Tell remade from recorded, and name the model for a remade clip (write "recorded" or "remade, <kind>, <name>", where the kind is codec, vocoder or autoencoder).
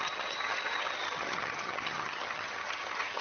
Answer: remade, vocoder, HiFi-GAN